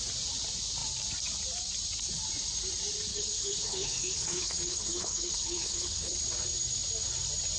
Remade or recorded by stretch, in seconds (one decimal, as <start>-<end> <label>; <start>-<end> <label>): 0.0-3.1 recorded; 3.1-6.2 remade; 6.2-7.6 recorded